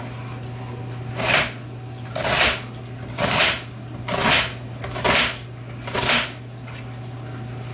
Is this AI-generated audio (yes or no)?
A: no